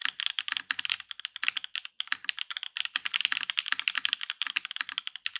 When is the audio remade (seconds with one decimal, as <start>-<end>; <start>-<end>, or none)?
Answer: none